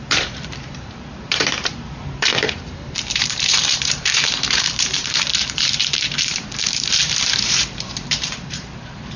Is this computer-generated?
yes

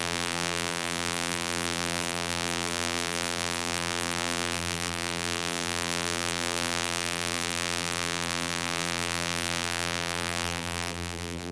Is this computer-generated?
yes